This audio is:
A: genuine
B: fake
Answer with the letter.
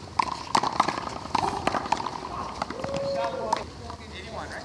A